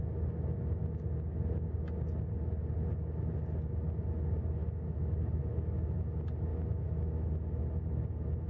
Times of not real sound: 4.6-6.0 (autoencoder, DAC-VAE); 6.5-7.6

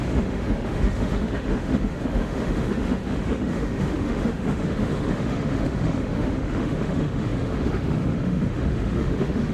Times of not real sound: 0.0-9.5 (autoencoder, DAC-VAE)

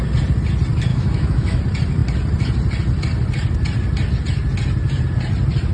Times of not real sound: 0.9-1.6 (autoencoder, DAC-VAE)

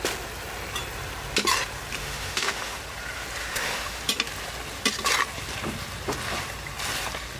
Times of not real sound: 2.0-2.8 (autoencoder, DAC-VAE); 3.4-4.0